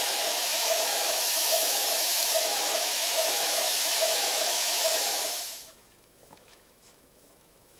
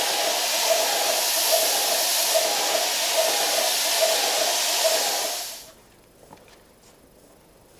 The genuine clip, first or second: second